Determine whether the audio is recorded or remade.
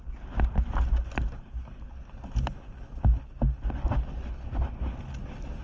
recorded